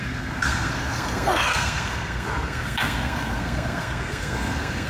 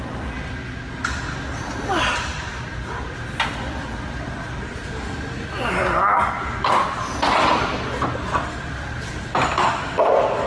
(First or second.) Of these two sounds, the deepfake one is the first